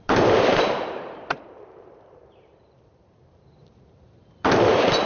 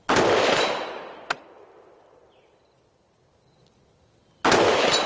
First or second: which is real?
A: second